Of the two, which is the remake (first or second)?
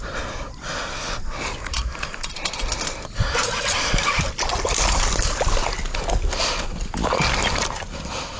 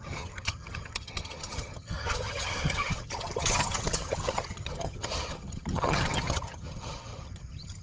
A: second